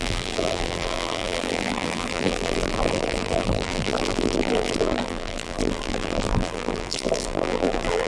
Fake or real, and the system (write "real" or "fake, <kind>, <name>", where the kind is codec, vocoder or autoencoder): fake, vocoder, BigVGAN v2